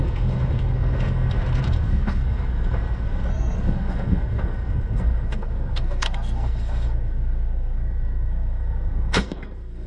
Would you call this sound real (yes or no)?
no